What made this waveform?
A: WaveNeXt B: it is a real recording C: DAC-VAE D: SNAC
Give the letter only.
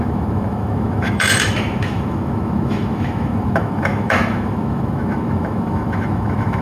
C